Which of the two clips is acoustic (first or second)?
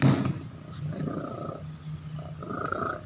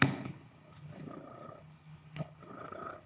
first